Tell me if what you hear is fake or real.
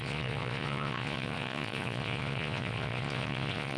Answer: fake